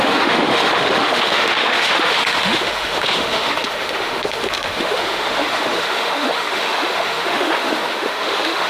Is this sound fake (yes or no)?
yes